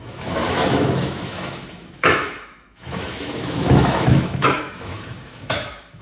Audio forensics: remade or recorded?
remade